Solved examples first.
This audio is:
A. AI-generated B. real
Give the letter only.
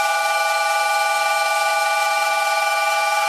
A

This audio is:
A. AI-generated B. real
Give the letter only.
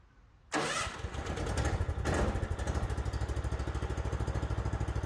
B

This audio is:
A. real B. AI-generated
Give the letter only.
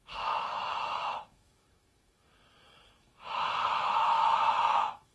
B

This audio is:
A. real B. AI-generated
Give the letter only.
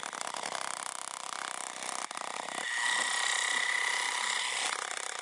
A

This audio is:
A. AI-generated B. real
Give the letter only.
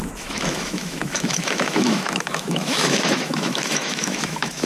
A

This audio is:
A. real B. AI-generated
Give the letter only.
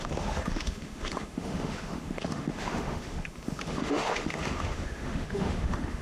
B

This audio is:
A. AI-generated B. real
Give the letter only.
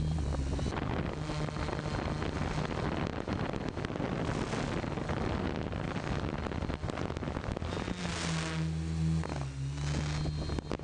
B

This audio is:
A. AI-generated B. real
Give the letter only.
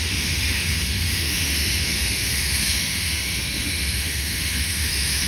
A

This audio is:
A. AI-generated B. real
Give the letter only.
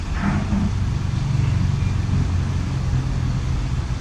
B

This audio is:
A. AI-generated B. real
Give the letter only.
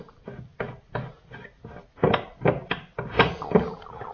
B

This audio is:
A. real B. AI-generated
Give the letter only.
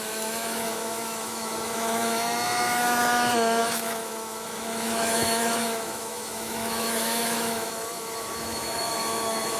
B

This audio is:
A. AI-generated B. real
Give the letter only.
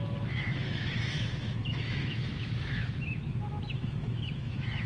A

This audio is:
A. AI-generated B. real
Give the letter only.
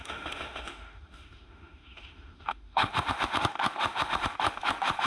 A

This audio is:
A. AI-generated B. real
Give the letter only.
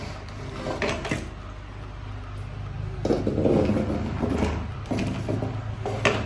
B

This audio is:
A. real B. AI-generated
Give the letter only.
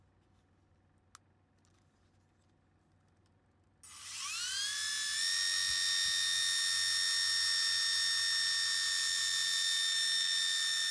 A